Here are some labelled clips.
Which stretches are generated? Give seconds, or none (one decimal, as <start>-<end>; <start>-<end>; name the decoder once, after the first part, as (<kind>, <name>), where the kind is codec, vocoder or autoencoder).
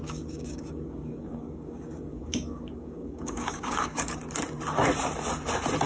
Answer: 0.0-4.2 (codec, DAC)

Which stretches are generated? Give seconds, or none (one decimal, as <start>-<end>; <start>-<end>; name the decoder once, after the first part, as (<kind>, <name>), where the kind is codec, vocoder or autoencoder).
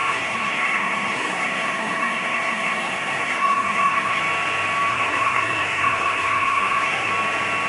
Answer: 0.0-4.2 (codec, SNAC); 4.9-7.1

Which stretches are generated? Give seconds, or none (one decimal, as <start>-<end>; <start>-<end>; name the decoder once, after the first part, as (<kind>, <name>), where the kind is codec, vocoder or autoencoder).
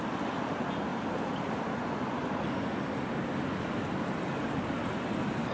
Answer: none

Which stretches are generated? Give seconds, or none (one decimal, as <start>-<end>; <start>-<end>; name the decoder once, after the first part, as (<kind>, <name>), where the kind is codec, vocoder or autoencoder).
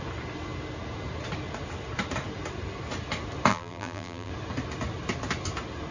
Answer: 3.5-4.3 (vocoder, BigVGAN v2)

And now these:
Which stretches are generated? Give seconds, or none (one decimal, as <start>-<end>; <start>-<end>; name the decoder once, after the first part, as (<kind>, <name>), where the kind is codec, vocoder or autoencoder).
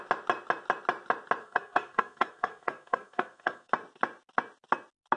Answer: 1.4-3.7 (codec, SNAC)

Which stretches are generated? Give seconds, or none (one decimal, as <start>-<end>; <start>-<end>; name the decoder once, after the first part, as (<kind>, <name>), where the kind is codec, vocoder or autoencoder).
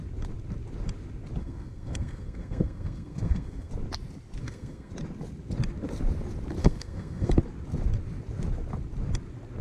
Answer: 1.4-3.7 (codec, SNAC); 4.4-4.9; 6.6-7.3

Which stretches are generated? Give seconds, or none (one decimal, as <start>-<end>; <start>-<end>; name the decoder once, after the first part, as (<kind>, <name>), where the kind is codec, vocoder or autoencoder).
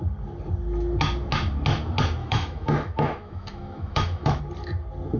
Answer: 2.2-4.4 (autoencoder, DAC-VAE)